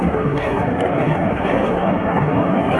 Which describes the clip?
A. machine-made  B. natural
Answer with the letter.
A